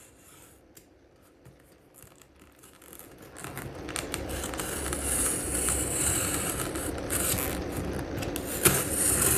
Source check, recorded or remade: recorded